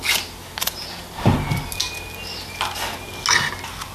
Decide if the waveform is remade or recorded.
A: recorded